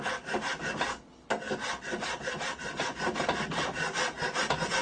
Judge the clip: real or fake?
real